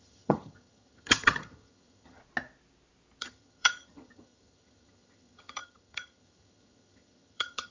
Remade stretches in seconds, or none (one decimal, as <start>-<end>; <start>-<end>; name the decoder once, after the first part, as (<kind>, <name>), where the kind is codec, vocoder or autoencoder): 0.0-2.2 (vocoder, HiFi-GAN); 3.2-7.7